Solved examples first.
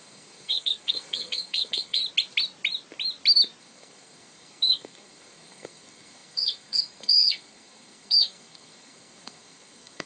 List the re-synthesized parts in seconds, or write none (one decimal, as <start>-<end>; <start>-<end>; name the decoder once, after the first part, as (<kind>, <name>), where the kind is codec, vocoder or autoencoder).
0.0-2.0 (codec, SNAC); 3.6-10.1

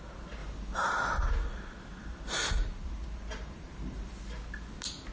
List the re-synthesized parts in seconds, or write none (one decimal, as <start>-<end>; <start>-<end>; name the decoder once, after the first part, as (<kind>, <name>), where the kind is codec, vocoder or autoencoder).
0.4-0.9 (vocoder, BigVGAN v2); 2.0-4.1

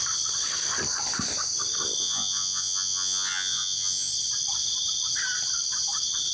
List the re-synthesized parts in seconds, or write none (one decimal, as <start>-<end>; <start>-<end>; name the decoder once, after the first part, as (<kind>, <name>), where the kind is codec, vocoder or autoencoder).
2.0-4.1 (vocoder, Vocos)